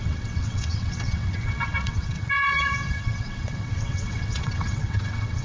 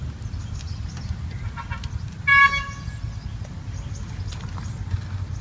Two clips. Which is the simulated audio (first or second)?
first